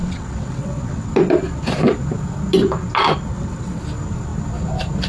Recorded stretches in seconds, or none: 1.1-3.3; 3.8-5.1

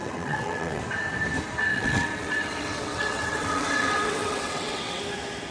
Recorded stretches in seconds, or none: 0.8-1.7; 5.0-5.5

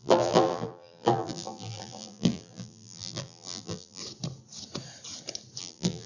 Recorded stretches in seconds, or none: 4.0-5.6

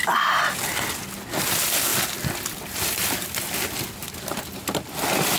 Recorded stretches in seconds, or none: 0.0-5.4

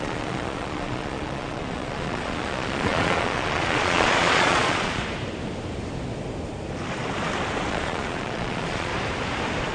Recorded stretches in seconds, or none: 5.0-7.7; 8.9-9.7

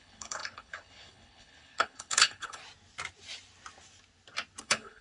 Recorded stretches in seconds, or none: 2.6-4.6

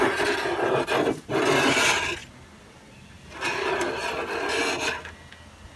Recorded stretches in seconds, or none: 0.0-5.8